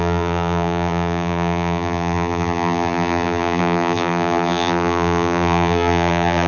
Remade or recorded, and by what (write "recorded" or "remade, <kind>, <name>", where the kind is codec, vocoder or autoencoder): remade, vocoder, BigVGAN v2